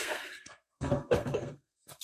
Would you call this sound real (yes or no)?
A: no